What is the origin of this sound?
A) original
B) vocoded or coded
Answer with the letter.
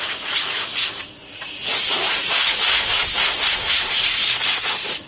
B